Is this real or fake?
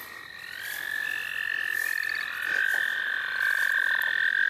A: real